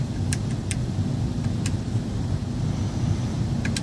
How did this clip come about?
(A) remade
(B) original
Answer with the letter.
B